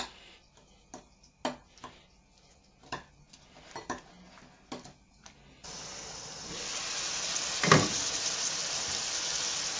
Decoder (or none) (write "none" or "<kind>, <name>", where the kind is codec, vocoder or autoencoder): none